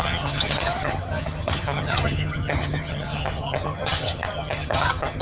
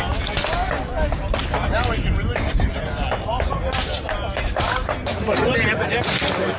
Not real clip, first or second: first